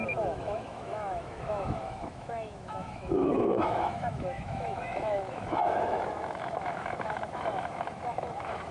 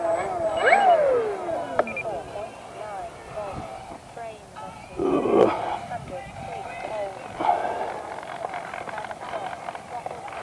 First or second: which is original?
second